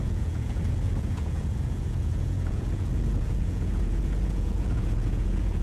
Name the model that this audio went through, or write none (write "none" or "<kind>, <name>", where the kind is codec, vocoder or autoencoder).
vocoder, Vocos